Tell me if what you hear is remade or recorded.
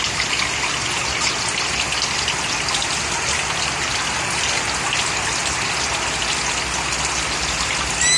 recorded